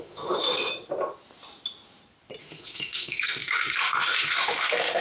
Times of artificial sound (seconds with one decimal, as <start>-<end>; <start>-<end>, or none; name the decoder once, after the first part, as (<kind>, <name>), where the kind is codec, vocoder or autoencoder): 0.0-0.7 (autoencoder, DAC-VAE); 2.4-5.0